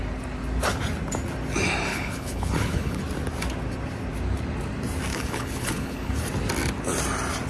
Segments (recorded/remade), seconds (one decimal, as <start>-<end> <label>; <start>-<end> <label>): 0.0-1.9 recorded; 1.9-3.0 remade; 3.0-5.1 recorded; 5.1-6.2 remade; 6.2-7.5 recorded